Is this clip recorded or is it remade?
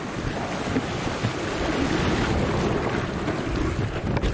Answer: recorded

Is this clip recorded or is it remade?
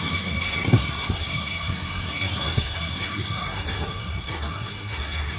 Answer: remade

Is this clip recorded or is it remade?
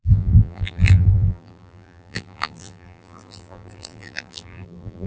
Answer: remade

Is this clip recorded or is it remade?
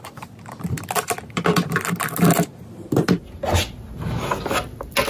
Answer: recorded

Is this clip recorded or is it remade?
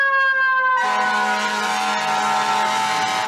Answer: recorded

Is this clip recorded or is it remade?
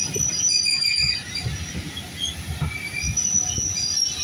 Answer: recorded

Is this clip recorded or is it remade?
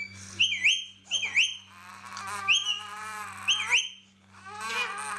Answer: recorded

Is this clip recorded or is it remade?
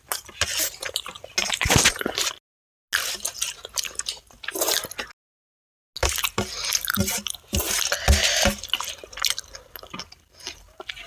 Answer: recorded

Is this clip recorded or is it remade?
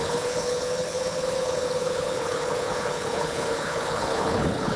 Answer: remade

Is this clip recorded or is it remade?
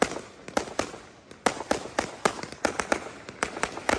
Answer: recorded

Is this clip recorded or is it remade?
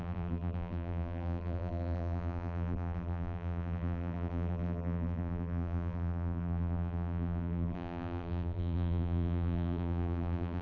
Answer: remade